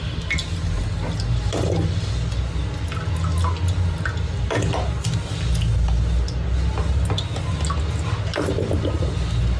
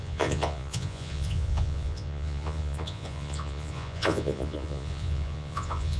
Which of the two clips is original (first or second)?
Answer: first